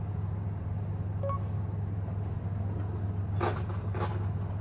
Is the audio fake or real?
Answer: real